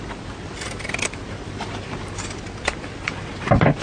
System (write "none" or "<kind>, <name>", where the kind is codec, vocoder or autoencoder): none